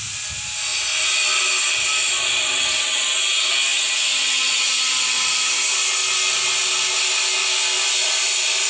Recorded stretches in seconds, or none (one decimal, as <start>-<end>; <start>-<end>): 0.0-8.7